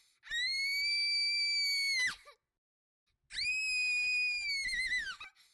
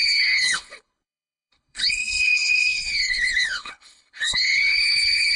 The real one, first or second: first